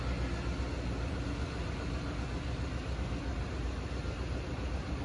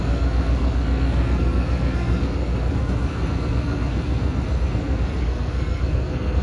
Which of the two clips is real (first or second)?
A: first